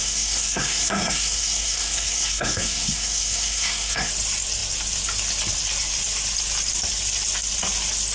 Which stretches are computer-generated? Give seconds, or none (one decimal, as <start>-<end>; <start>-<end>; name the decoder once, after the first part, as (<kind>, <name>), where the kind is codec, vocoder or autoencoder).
0.0-4.1 (codec, SNAC)